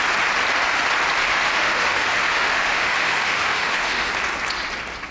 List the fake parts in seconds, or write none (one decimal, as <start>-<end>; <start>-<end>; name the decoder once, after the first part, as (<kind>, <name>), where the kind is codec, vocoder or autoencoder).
1.3-4.1 (autoencoder, DAC-VAE)